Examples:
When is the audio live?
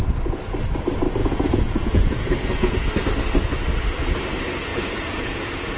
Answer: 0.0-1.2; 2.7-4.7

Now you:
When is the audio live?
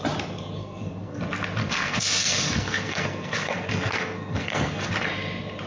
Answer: 0.0-0.6; 1.2-1.6; 4.9-5.7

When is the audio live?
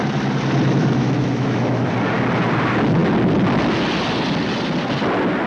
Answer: 0.0-0.8; 1.9-5.5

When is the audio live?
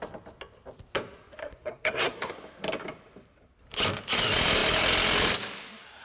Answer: 0.0-1.4; 2.3-6.0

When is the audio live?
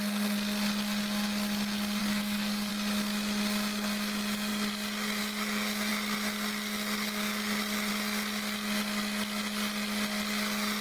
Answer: 0.0-2.0; 2.7-10.8